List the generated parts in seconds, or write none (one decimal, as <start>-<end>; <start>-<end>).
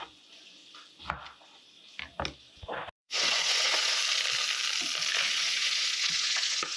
0.0-0.6; 2.9-4.0; 5.2-6.8